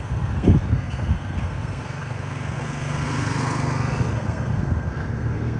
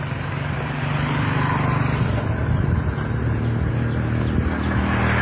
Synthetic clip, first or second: first